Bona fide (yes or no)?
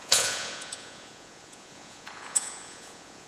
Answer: no